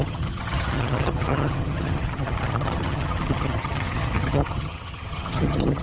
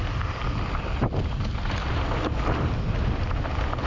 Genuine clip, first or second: second